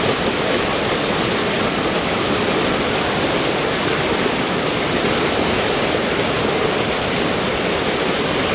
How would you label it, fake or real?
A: real